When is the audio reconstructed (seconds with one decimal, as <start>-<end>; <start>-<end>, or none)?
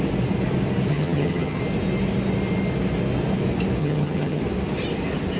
0.9-1.6; 3.8-4.4